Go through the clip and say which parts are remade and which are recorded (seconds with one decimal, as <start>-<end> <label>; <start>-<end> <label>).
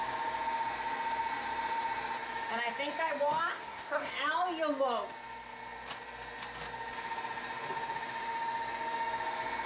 0.0-3.5 recorded; 3.5-4.1 remade; 4.1-9.7 recorded